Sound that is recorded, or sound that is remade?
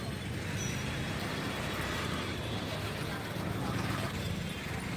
recorded